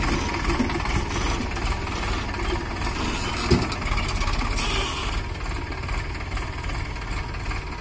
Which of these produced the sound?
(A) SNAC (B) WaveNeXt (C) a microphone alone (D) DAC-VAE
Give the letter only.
C